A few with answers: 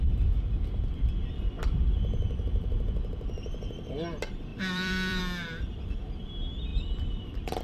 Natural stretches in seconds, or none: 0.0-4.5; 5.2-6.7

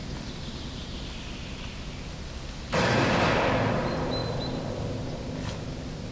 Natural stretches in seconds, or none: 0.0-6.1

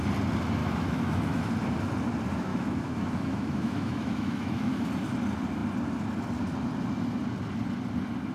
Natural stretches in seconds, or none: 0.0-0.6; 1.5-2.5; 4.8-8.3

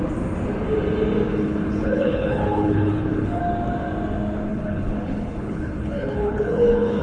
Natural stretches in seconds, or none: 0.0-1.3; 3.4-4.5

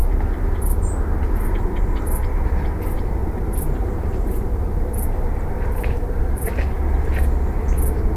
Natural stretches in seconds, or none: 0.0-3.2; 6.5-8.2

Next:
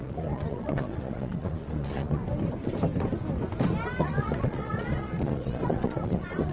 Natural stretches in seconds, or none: 2.2-4.0

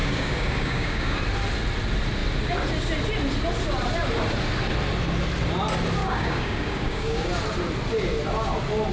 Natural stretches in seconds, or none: 1.2-6.0; 7.3-8.9

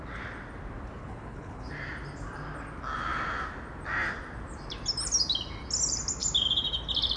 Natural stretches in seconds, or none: 0.0-1.0; 1.7-7.2